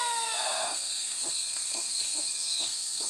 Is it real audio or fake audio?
fake